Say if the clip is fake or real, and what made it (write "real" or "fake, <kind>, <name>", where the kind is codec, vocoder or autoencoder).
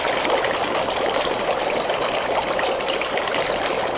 real